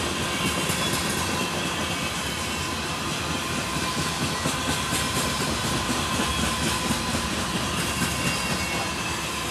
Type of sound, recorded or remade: recorded